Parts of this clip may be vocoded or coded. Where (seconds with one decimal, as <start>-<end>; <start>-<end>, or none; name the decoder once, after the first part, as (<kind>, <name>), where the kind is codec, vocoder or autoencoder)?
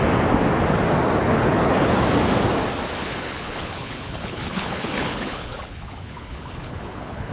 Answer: 1.2-2.0 (codec, HILCodec); 3.0-7.3